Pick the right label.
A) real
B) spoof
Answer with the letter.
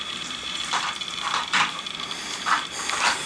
B